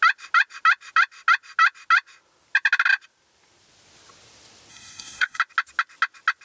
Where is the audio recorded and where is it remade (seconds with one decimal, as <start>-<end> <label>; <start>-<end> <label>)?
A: 0.0-4.7 recorded; 4.7-5.4 remade; 5.4-6.4 recorded